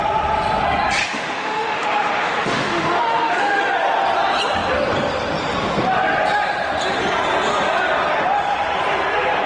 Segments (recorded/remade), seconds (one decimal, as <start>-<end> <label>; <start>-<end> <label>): 0.0-1.0 recorded; 1.0-3.6 remade; 3.6-9.5 recorded